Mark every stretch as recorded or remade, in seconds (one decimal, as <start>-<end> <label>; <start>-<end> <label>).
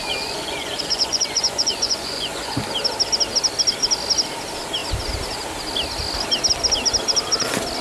0.0-2.6 remade; 2.6-7.8 recorded